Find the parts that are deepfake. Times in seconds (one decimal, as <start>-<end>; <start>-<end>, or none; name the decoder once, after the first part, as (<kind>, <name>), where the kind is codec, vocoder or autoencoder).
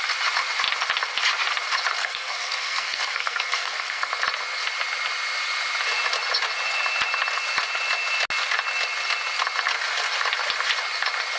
2.0-4.1 (codec, SNAC)